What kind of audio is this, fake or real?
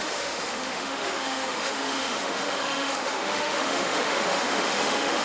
fake